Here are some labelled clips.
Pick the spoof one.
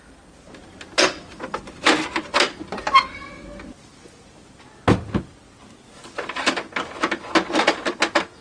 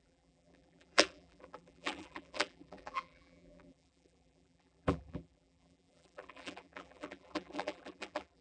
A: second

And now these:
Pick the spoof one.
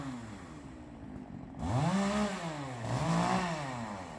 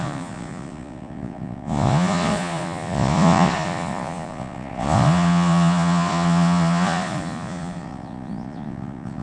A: second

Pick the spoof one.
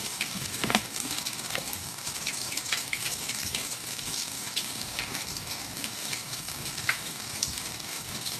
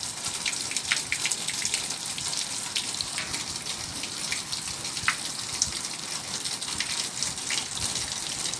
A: first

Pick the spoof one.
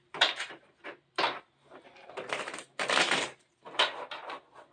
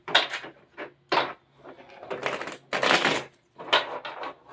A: first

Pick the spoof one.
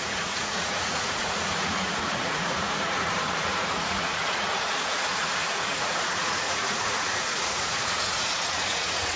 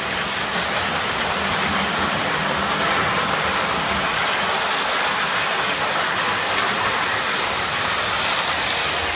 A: first